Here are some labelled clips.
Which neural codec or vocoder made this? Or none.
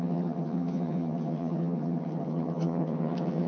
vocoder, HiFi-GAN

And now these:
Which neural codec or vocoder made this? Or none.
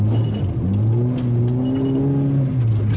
none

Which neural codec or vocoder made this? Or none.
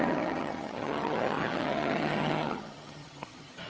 vocoder, HiFi-GAN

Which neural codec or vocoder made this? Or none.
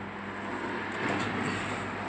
none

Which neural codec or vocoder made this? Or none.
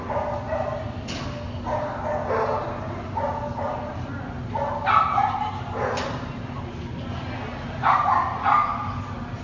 none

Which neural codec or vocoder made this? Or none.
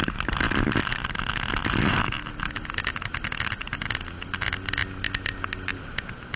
none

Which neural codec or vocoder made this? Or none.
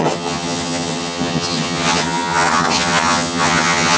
vocoder, HiFi-GAN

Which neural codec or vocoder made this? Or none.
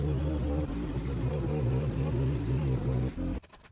none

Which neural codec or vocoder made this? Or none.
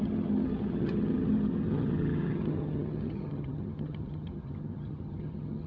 vocoder, HiFi-GAN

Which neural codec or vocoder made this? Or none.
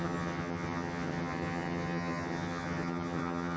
vocoder, HiFi-GAN